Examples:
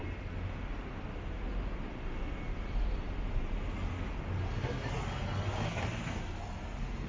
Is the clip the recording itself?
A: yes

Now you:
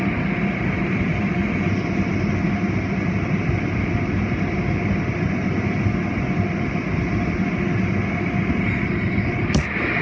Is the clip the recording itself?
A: yes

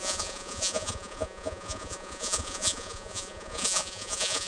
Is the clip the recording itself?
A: no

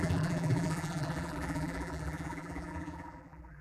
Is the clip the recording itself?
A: no